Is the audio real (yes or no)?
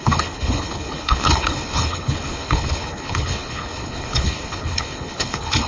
no